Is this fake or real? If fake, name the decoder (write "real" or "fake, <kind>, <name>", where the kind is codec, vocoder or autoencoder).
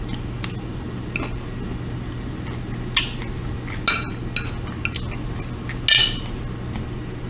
real